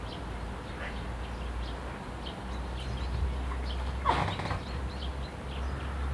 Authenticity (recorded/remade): recorded